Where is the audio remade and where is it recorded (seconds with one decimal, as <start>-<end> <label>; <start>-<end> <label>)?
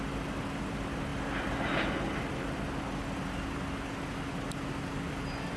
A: 0.0-5.6 recorded